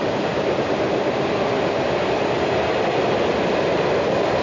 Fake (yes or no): no